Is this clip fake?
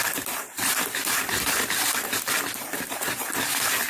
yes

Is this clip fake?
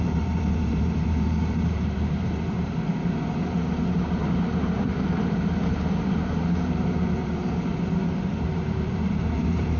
yes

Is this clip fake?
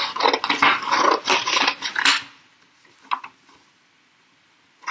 no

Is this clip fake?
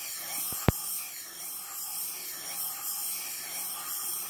no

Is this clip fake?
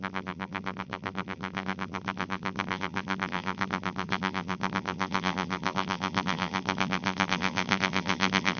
yes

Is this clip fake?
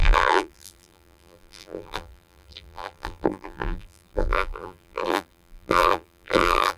yes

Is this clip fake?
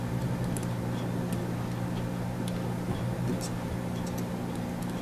no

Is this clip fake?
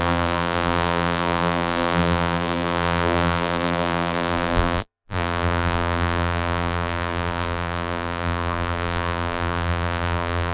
yes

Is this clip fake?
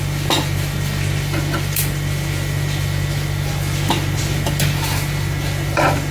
no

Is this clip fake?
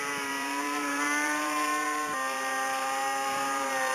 yes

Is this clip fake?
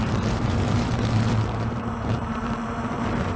yes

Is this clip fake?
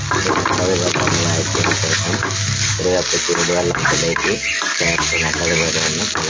no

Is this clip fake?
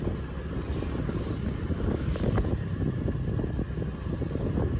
no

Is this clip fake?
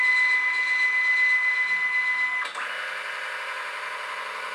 no